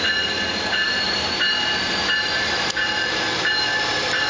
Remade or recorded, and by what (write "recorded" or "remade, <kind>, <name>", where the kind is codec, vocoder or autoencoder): recorded